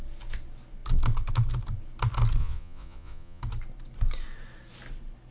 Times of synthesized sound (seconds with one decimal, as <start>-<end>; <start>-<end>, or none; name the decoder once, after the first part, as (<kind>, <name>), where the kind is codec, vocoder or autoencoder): 2.4-3.4 (vocoder, Vocos)